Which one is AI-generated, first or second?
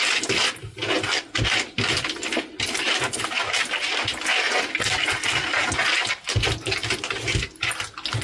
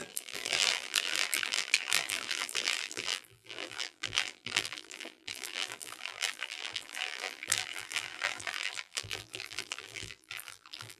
second